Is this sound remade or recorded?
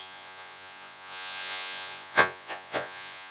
remade